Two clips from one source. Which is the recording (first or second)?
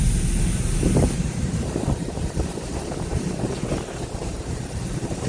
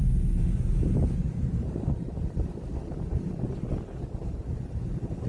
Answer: second